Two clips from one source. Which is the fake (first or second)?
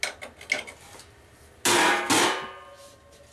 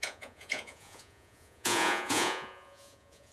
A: second